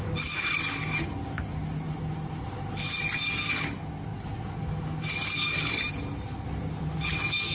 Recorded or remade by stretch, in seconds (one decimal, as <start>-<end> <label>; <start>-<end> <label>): 0.0-7.5 recorded